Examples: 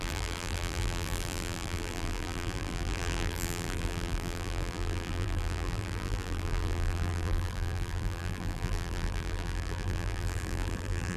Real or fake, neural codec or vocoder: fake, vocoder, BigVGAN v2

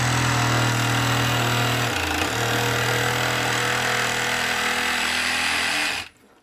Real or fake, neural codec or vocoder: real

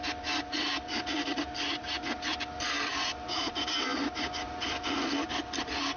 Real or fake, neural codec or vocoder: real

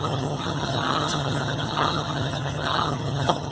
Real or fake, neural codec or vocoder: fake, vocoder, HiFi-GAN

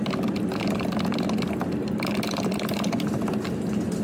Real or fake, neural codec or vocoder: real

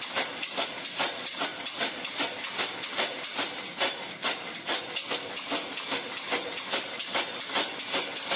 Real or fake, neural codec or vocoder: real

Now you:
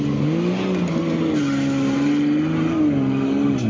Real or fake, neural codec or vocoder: real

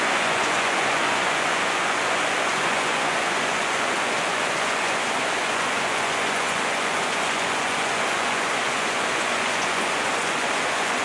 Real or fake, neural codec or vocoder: fake, vocoder, Vocos